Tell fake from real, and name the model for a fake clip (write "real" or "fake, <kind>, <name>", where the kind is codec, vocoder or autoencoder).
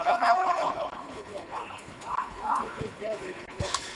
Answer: fake, codec, HILCodec